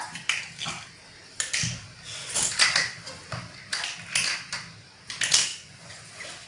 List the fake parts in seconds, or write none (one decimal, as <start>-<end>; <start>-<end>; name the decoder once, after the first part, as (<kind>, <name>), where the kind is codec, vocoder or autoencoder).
5.5-6.1 (vocoder, Vocos)